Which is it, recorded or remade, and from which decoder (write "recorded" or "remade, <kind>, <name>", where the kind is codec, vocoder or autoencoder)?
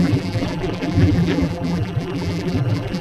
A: remade, vocoder, BigVGAN v2